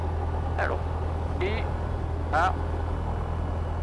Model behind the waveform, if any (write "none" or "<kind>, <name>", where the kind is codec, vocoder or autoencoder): none